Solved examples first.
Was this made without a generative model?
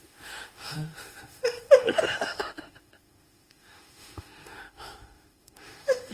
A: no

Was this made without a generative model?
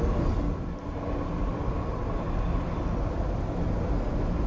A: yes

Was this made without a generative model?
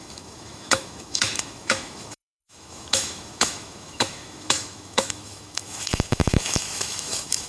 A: no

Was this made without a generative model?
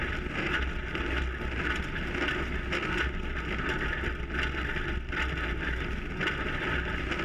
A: yes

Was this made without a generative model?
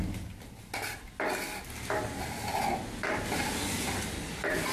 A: yes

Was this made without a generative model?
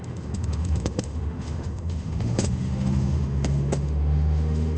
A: no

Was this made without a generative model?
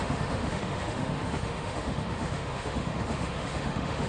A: no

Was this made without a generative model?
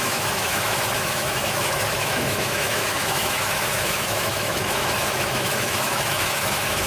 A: no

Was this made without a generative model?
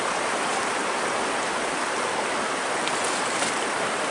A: yes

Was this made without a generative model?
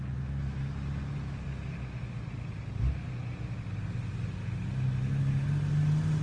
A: yes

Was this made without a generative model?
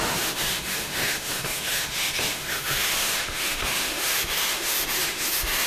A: no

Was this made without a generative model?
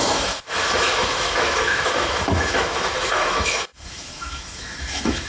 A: no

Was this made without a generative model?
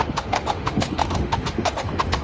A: no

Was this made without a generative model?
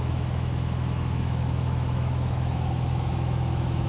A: no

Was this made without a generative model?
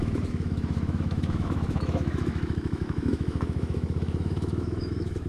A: no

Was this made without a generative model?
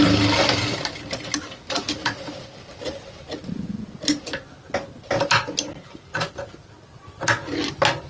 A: yes